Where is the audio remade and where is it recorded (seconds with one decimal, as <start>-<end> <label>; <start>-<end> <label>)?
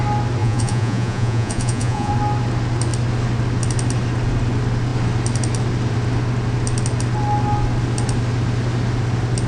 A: 0.0-0.4 recorded; 0.4-2.1 remade; 2.1-9.5 recorded